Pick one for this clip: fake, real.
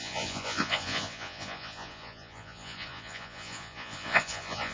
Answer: fake